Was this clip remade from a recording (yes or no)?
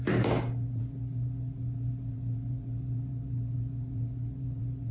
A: yes